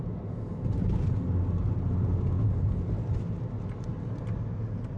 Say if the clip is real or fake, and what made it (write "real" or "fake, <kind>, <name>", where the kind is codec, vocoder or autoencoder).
real